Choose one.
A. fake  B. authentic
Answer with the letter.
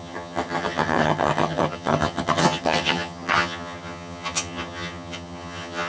A